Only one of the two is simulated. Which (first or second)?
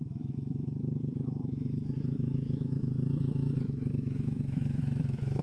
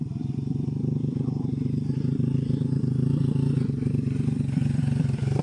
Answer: first